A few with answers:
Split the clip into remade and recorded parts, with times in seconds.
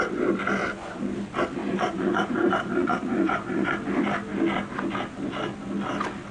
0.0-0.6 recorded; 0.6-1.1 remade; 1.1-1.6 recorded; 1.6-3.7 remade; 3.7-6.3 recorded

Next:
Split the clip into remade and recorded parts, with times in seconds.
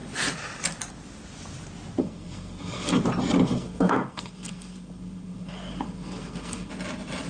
0.0-2.0 recorded; 2.0-3.0 remade; 3.0-3.4 recorded; 3.4-6.7 remade; 6.7-7.3 recorded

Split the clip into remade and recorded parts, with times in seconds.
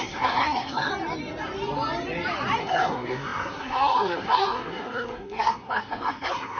0.0-0.9 remade; 0.9-2.6 recorded; 2.6-6.6 remade